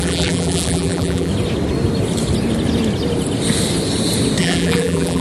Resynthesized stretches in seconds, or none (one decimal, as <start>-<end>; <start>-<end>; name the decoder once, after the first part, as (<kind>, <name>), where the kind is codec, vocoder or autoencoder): 0.0-1.3 (vocoder, BigVGAN v2); 4.4-5.2